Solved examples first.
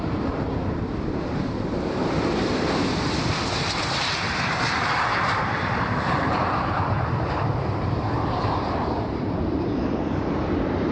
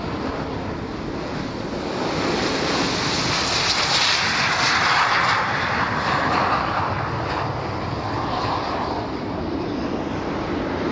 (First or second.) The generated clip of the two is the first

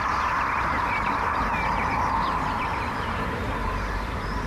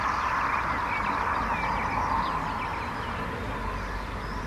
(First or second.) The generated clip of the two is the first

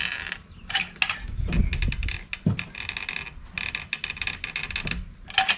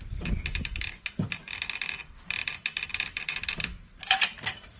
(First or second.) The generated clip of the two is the second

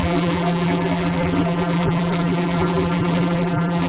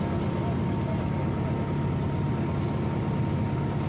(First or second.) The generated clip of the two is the first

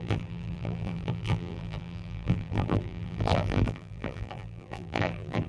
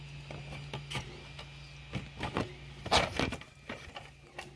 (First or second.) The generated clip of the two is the first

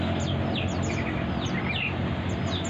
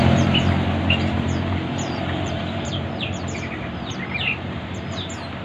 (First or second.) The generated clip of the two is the second